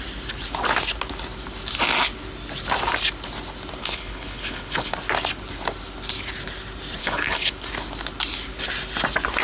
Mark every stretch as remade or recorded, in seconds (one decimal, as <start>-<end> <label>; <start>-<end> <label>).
0.0-3.8 recorded; 3.8-4.9 remade; 4.9-7.0 recorded; 7.0-7.5 remade; 7.5-9.4 recorded

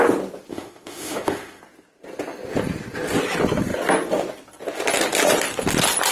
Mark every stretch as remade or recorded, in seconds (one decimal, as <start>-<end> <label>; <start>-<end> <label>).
0.0-0.5 recorded; 0.5-1.6 remade; 1.6-6.1 recorded

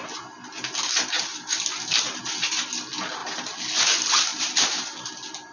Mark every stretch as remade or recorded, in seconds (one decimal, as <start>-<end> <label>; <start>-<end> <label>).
0.0-4.3 recorded; 4.3-5.1 remade; 5.1-5.5 recorded